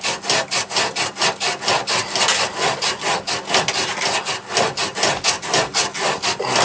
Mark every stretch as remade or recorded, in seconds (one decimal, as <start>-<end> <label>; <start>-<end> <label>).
0.0-6.6 recorded